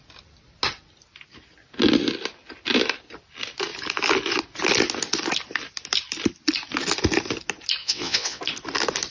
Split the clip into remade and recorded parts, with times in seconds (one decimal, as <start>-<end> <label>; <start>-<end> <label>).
0.0-7.8 recorded; 7.8-8.4 remade; 8.4-9.1 recorded